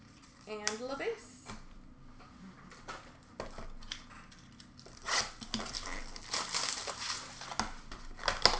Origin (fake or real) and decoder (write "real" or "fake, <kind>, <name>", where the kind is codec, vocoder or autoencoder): real